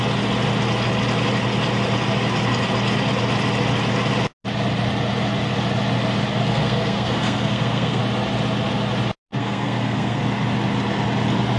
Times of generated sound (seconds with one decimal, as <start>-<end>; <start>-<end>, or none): 6.5-8.0; 9.3-10.2